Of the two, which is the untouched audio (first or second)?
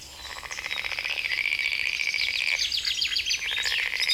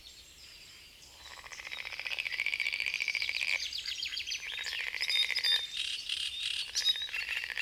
first